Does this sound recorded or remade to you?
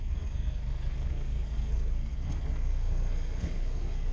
remade